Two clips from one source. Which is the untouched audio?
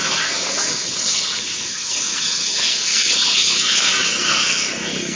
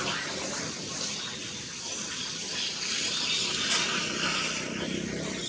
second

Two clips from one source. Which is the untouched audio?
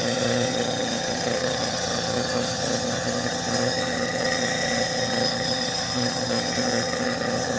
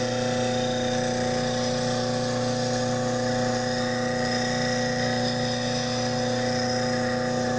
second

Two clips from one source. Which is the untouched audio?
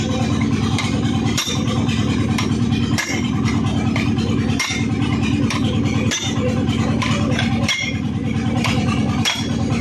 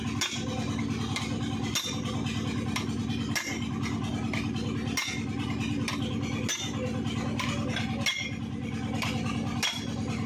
second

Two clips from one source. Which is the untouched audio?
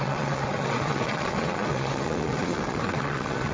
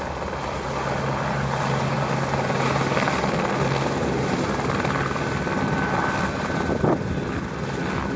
second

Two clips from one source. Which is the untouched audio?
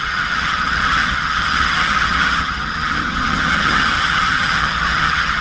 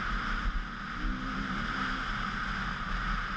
second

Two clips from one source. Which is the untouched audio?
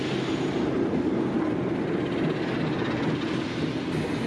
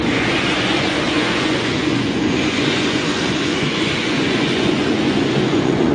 first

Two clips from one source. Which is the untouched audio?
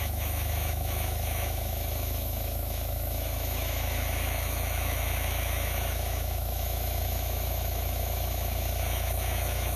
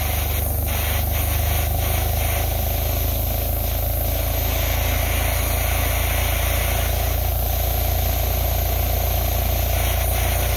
second